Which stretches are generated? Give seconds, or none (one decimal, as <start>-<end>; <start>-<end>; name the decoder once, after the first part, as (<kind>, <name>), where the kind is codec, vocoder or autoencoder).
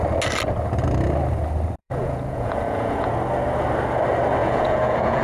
1.8-3.1 (vocoder, Vocos); 4.4-5.2